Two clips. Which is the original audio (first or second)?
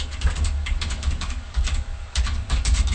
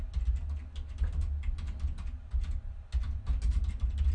second